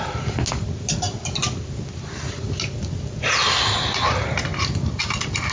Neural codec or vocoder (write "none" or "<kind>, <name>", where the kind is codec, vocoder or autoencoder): none